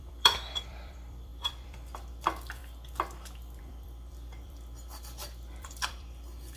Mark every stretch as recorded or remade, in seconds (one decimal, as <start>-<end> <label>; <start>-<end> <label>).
0.0-2.6 remade; 2.6-3.6 recorded; 3.6-6.6 remade